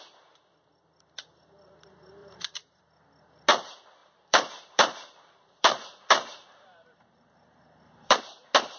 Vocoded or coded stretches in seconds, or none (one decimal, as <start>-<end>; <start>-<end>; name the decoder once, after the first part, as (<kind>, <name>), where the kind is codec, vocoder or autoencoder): 2.2-2.8 (vocoder, BigVGAN v2); 4.0-8.2